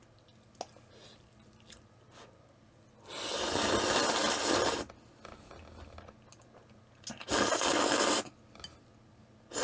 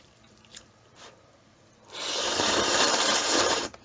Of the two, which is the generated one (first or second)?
second